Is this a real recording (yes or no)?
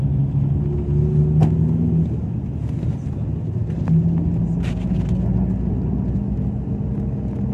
yes